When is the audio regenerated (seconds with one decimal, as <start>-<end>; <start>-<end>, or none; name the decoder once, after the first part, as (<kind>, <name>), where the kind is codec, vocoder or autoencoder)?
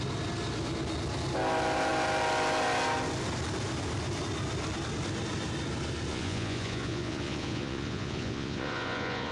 6.1-9.3 (vocoder, Vocos)